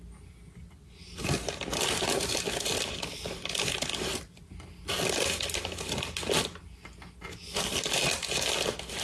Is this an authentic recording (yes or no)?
yes